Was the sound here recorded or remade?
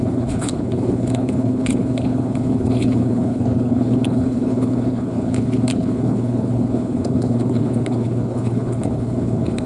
remade